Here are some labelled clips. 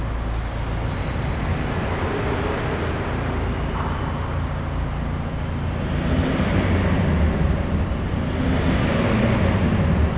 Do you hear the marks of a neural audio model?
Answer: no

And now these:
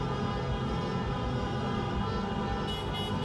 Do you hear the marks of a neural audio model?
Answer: no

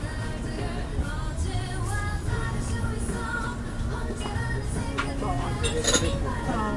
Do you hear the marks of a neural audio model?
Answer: no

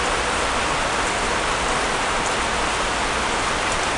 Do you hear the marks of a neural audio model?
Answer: no